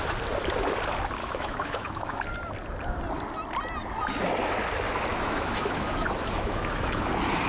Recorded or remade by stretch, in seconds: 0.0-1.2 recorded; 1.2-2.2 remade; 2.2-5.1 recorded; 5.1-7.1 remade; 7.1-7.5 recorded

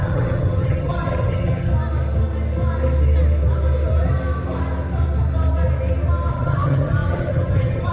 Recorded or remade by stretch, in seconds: 0.0-1.7 remade; 1.7-6.3 recorded; 6.3-7.9 remade

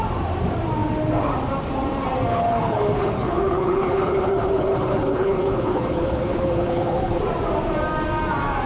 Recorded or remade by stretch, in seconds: 0.0-2.3 recorded; 2.3-7.2 remade; 7.2-8.7 recorded

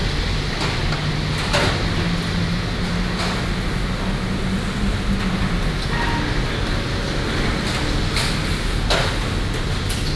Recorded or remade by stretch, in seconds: 0.0-10.2 recorded

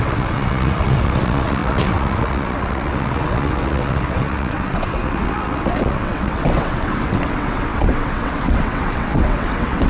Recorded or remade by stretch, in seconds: 0.0-9.9 remade

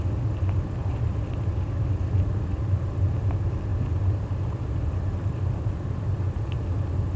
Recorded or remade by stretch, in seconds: 0.0-7.2 recorded